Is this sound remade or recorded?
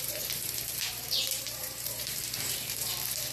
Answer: remade